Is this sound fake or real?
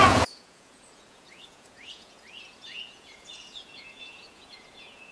fake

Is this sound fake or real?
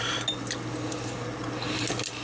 real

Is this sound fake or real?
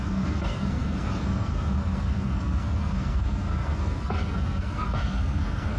fake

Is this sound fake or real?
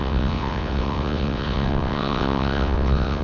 fake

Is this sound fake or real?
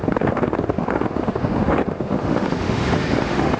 fake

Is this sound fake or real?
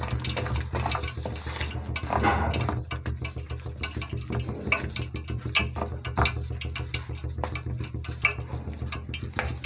real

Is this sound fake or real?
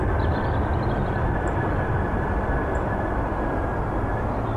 fake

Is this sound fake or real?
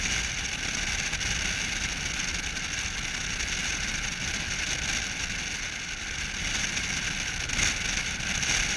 real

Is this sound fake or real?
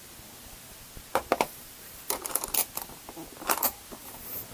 real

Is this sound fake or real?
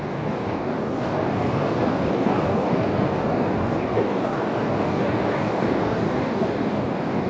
fake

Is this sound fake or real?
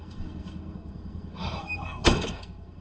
fake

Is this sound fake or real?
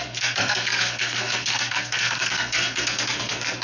fake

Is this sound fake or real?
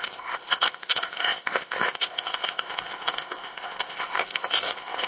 fake